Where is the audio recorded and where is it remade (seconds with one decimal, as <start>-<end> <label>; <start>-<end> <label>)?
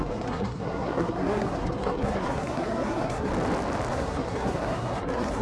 0.0-3.3 remade; 3.3-3.9 recorded; 3.9-5.4 remade